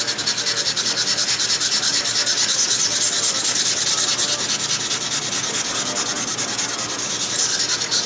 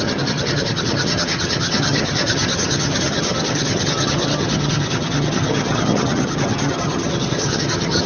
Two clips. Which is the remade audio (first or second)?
second